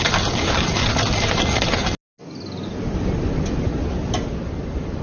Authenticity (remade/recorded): recorded